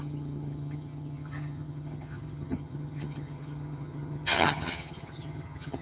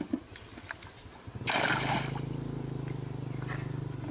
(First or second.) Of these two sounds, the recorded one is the second